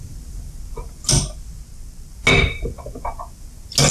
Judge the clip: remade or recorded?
recorded